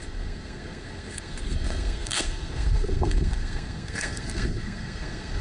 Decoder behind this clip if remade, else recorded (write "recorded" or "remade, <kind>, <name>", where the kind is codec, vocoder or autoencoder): remade, codec, SNAC